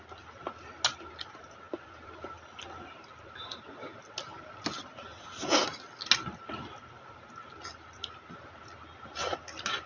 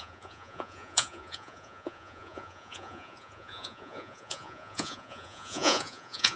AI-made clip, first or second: second